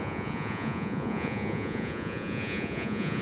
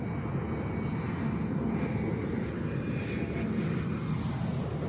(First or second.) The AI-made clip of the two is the first